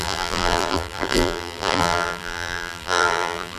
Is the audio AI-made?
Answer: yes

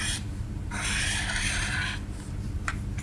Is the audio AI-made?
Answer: yes